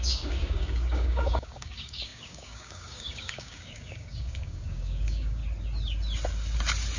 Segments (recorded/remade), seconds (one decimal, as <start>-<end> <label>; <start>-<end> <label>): 0.0-5.4 remade; 5.4-7.0 recorded